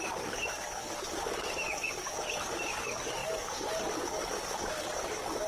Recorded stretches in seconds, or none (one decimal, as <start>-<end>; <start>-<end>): none